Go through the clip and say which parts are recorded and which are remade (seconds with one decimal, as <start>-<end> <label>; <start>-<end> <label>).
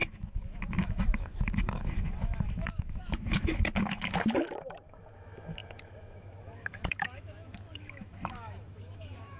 0.0-9.4 remade